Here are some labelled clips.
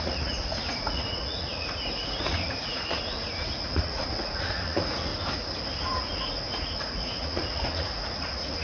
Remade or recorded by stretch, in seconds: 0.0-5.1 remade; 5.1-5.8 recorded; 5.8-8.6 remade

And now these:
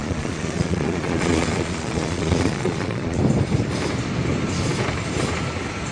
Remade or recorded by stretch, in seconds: 0.0-3.2 remade; 3.2-5.9 recorded

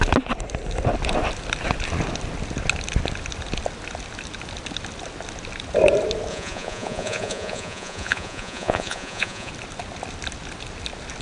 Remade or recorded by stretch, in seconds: 0.0-6.3 recorded; 6.3-9.5 remade; 9.5-11.2 recorded

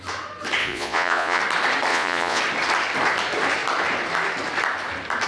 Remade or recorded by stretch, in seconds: 0.0-0.6 recorded; 0.6-1.4 remade; 1.4-1.9 recorded; 1.9-2.4 remade; 2.4-5.3 recorded

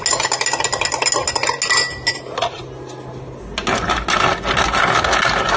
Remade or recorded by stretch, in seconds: 0.0-5.6 recorded

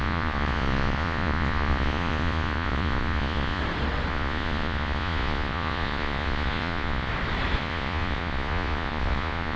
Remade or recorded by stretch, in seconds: 0.0-3.6 remade; 3.6-4.1 recorded; 4.1-7.1 remade; 7.1-7.6 recorded; 7.6-9.6 remade

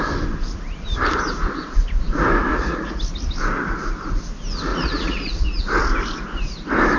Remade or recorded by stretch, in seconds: 0.0-2.5 recorded; 2.5-3.0 remade; 3.0-4.7 recorded; 4.7-5.6 remade; 5.6-7.0 recorded

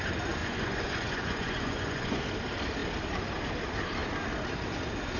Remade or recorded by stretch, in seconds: 0.0-0.4 recorded; 0.4-2.2 remade; 2.2-5.2 recorded